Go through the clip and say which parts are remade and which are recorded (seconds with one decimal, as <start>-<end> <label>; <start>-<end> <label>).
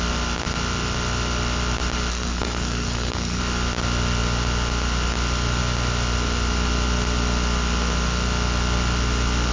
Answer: 0.0-2.1 recorded; 2.1-3.4 remade; 3.4-9.5 recorded